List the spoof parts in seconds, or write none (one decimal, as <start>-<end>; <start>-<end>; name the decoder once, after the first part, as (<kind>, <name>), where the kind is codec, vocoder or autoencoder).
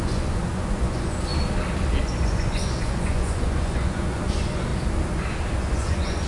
0.0-1.3 (vocoder, Vocos); 2.0-4.7; 5.5-6.3